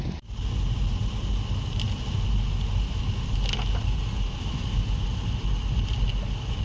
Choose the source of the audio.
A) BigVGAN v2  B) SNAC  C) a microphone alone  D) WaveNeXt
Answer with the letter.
C